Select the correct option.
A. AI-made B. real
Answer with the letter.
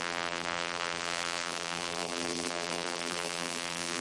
A